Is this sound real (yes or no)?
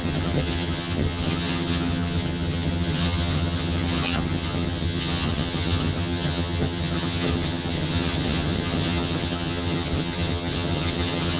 no